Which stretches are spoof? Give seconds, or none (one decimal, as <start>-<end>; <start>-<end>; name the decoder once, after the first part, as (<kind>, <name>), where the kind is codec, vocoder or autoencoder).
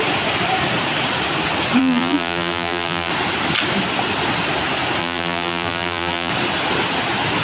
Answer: 1.8-3.1 (vocoder, BigVGAN v2); 5.0-6.3